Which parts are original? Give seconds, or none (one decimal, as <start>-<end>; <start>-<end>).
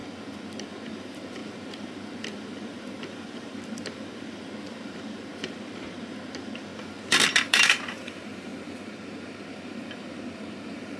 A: 0.0-0.9; 6.7-7.3